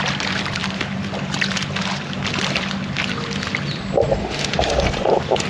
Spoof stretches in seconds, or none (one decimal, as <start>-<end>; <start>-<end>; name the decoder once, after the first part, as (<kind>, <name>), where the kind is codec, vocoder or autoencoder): 4.2-4.8 (autoencoder, DAC-VAE)